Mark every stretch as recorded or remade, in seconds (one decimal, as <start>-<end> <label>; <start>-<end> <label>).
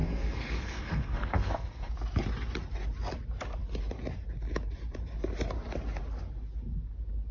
0.0-1.9 remade; 1.9-7.3 recorded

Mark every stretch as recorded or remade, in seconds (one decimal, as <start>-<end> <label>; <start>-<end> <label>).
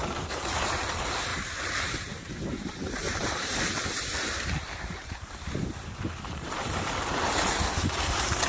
0.0-0.7 remade; 0.7-1.3 recorded; 1.3-5.7 remade; 5.7-8.5 recorded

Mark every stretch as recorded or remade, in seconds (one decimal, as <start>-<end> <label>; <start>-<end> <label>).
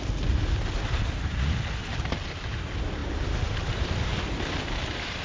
0.0-5.2 recorded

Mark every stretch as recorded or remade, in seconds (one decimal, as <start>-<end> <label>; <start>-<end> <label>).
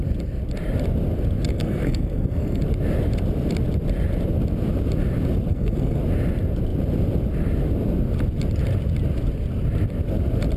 0.0-1.5 recorded; 1.5-2.6 remade; 2.6-5.5 recorded; 5.5-6.0 remade; 6.0-10.6 recorded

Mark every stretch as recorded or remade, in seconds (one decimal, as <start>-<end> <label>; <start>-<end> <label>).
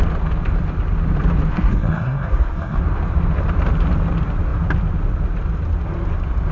0.0-1.5 recorded; 1.5-2.8 remade; 2.8-6.5 recorded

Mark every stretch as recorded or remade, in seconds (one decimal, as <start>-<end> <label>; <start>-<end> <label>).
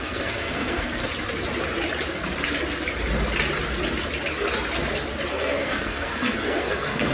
0.0-1.0 remade; 1.0-5.3 recorded; 5.3-7.1 remade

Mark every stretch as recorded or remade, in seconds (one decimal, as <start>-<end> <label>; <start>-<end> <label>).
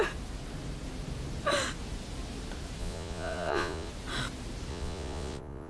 0.0-2.8 recorded; 2.8-3.9 remade; 3.9-4.7 recorded; 4.7-5.7 remade